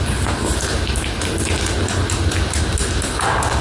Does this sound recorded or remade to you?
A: recorded